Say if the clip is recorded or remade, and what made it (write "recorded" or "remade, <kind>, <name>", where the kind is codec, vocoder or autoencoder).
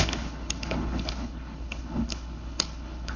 remade, codec, HILCodec